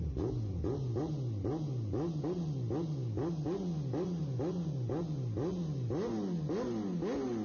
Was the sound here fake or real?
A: real